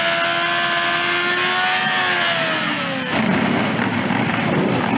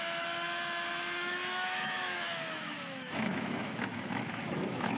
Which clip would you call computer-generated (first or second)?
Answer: second